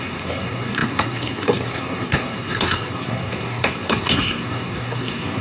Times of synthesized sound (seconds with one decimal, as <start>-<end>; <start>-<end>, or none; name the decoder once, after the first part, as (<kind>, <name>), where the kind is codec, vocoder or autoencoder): 0.0-5.4 (codec, SNAC)